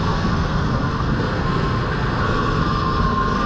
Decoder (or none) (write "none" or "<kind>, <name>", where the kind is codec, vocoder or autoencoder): codec, SNAC